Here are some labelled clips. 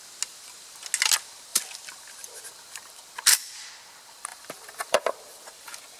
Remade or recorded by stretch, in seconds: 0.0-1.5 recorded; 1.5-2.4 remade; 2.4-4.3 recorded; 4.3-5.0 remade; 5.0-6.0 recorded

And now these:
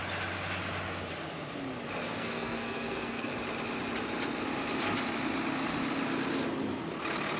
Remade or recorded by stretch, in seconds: 0.0-2.0 recorded; 2.0-3.3 remade; 3.3-7.4 recorded

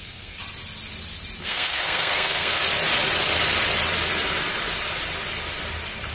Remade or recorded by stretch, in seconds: 0.0-0.4 remade; 0.4-1.4 recorded; 1.4-2.6 remade; 2.6-6.1 recorded

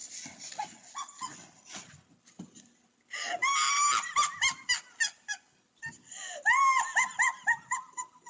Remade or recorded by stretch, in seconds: 0.0-3.4 recorded; 3.4-4.6 remade; 4.6-8.3 recorded

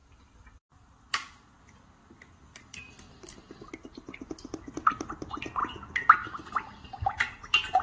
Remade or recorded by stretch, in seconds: 0.0-1.6 remade; 1.6-2.0 recorded; 2.0-5.1 remade; 5.1-7.8 recorded